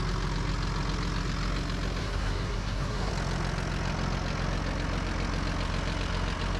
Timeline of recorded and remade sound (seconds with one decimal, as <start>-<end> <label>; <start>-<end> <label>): 0.0-2.0 recorded; 2.0-3.1 remade; 3.1-6.6 recorded